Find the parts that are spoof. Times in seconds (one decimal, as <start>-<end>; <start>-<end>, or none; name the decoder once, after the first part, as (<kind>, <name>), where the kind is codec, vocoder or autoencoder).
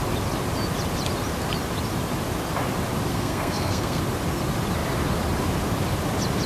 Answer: 3.1-4.0 (codec, SNAC)